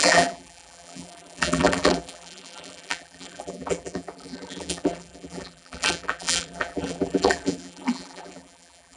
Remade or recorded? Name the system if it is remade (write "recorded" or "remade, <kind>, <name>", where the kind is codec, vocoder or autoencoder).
remade, vocoder, BigVGAN v2